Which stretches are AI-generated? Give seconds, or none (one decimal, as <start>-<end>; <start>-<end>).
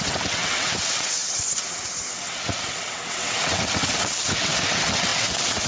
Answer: 0.0-5.7